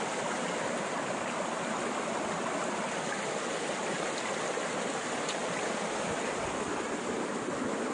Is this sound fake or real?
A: real